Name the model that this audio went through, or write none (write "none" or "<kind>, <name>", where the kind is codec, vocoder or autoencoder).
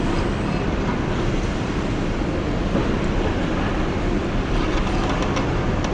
none